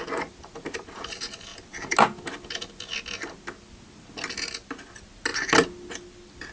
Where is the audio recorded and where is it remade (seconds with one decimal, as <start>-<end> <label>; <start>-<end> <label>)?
0.0-6.5 recorded